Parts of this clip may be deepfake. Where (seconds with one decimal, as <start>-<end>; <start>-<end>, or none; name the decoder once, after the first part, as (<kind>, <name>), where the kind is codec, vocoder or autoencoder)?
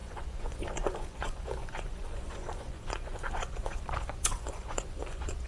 0.0-5.5 (vocoder, Vocos)